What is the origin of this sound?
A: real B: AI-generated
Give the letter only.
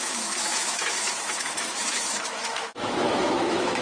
B